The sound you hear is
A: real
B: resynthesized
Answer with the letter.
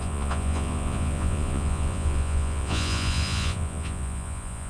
B